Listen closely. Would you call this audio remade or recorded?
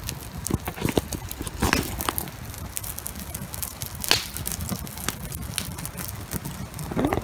recorded